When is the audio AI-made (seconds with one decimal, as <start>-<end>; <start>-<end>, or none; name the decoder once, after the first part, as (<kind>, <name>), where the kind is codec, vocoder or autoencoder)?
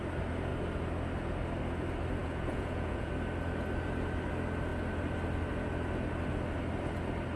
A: 2.2-3.1 (vocoder, Vocos)